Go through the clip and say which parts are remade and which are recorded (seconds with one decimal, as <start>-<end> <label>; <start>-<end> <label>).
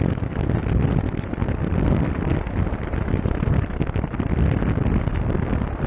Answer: 0.0-5.9 remade